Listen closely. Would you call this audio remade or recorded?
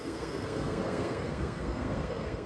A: remade